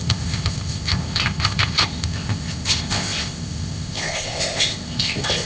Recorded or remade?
remade